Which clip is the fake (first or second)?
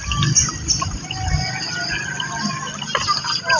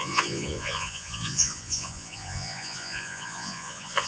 second